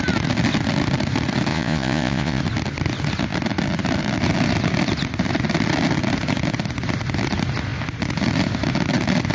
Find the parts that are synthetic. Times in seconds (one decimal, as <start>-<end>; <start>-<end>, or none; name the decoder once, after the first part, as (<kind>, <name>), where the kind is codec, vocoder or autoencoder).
1.5-2.4 (vocoder, Vocos)